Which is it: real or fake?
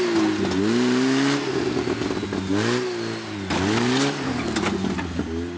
real